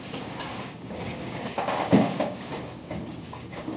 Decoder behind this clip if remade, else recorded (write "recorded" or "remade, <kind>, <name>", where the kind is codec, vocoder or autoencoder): remade, codec, DAC